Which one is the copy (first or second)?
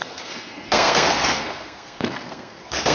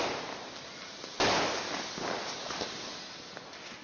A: first